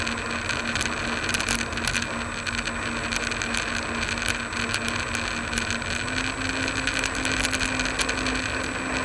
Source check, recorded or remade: recorded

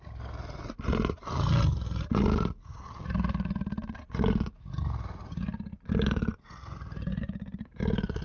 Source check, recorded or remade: recorded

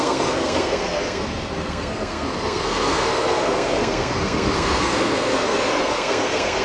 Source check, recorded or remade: remade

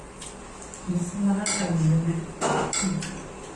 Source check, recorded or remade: recorded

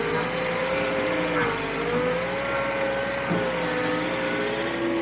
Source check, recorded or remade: recorded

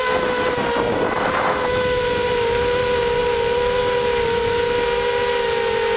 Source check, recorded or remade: recorded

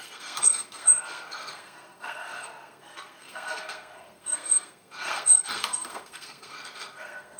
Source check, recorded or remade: remade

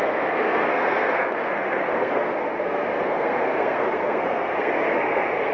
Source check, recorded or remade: remade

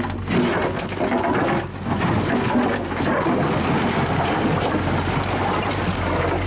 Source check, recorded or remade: recorded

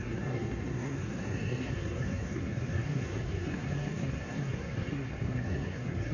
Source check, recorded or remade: remade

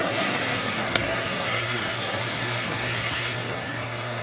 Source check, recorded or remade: remade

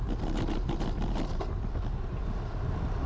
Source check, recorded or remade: recorded